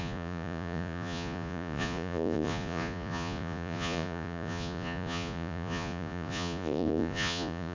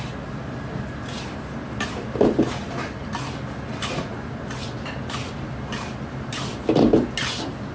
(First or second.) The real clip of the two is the second